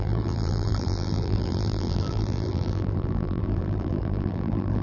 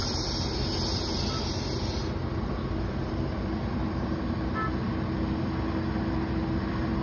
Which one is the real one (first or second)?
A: second